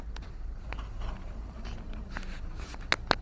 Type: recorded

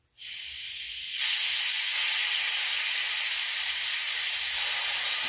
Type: recorded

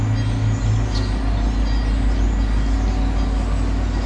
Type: recorded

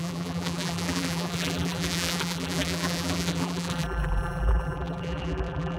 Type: remade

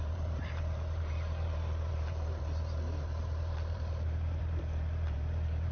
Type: remade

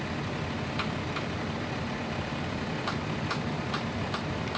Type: recorded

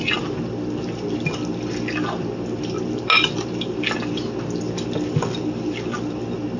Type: recorded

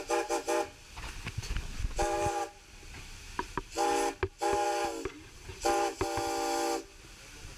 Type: recorded